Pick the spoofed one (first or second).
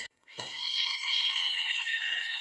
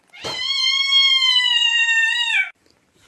first